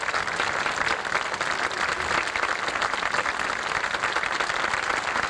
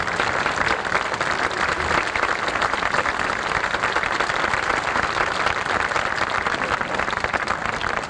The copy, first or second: second